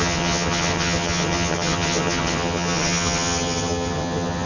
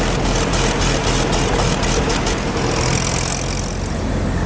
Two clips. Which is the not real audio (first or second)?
first